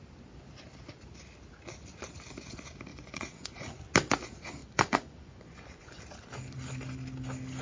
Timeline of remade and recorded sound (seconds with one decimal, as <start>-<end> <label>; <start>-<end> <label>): 0.0-2.9 recorded; 2.9-3.8 remade; 3.8-4.6 recorded; 4.6-6.0 remade; 6.0-7.6 recorded